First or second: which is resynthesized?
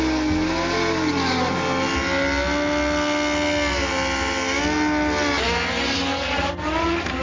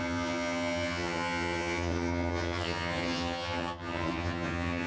second